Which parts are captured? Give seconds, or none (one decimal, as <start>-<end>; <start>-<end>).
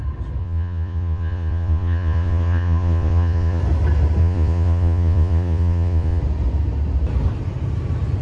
0.0-0.4; 3.6-4.2; 6.2-8.2